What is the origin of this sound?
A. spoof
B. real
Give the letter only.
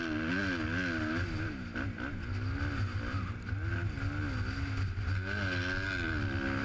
B